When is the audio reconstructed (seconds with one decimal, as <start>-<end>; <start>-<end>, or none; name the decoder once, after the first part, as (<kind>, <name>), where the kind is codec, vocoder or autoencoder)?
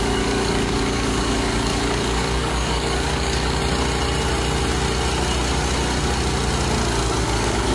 0.0-3.6 (codec, DAC); 7.2-7.7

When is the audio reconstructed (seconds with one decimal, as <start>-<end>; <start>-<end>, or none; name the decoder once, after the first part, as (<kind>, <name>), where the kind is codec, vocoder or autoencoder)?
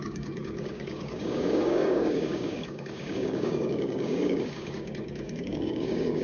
0.0-6.2 (codec, DAC)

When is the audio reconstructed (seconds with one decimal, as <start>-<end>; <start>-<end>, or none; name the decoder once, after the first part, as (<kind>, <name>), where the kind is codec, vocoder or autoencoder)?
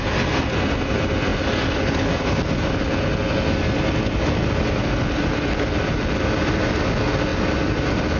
none